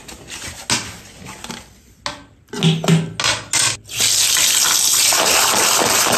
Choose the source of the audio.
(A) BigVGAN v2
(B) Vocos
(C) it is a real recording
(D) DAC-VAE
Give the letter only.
C